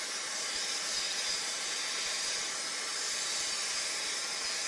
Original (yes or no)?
yes